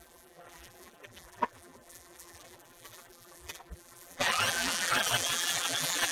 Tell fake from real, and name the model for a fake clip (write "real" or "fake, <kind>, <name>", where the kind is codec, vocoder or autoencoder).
fake, vocoder, BigVGAN v2